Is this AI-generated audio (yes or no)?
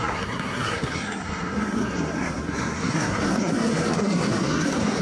yes